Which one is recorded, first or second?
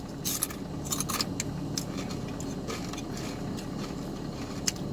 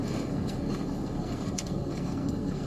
first